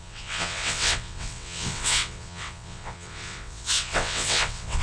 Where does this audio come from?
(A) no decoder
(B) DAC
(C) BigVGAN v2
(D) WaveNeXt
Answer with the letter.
D